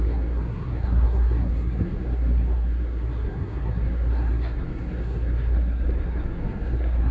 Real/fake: fake